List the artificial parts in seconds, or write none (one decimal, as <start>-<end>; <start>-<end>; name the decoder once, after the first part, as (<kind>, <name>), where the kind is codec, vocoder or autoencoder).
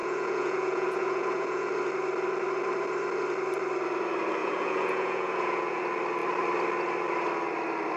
0.0-1.7 (vocoder, Vocos); 4.4-5.8